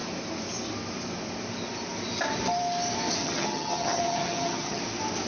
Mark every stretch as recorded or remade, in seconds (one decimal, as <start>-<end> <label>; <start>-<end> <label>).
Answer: 0.0-3.2 recorded; 3.2-4.8 remade; 4.8-5.3 recorded